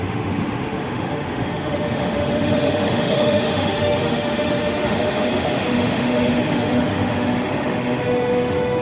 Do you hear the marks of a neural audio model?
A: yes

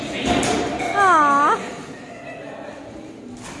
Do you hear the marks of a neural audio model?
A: no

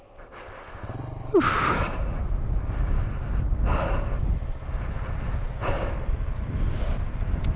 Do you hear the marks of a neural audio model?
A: no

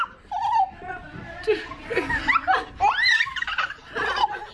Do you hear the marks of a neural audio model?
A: yes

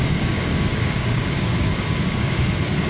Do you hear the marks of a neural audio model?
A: yes